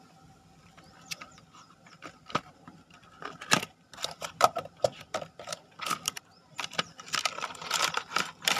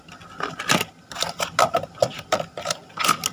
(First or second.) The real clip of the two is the second